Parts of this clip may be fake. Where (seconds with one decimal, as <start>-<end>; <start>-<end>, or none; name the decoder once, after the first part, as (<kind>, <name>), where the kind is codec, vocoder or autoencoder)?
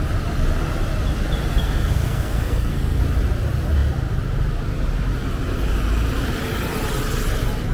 1.5-3.0 (codec, SNAC)